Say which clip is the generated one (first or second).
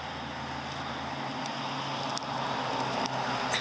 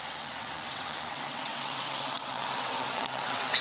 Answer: second